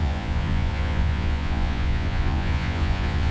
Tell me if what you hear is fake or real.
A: fake